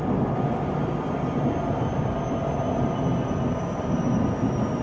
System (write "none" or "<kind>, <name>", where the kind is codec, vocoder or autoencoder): none